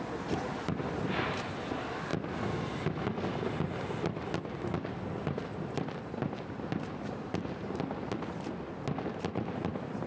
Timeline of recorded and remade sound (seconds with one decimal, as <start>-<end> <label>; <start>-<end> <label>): 0.0-10.1 recorded